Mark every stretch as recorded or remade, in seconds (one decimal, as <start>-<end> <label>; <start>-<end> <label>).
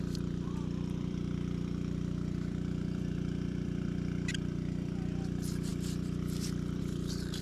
0.0-7.4 remade